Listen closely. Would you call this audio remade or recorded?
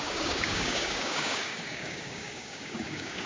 remade